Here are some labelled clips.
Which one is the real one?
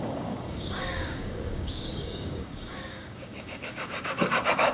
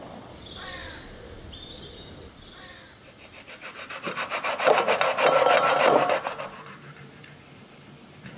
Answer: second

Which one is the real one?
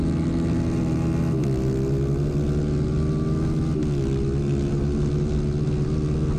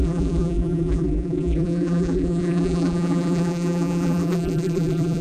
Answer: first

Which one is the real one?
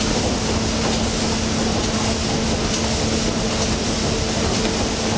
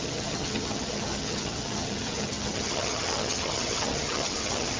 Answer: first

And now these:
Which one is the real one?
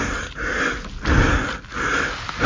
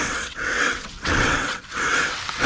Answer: first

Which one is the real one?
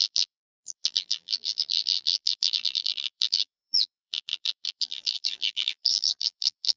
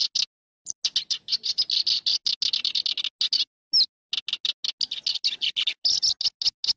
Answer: second